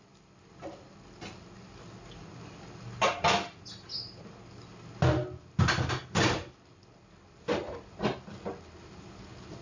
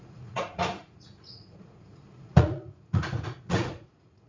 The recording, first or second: first